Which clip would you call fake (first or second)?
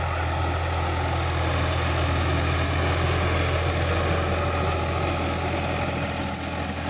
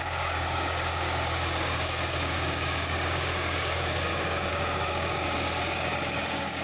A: second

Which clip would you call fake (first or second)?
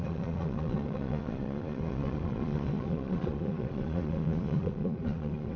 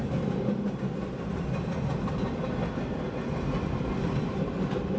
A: first